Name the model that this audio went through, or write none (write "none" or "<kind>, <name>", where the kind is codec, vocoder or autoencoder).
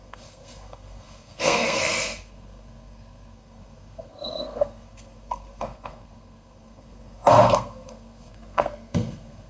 codec, SNAC